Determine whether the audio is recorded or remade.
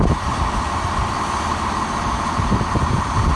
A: remade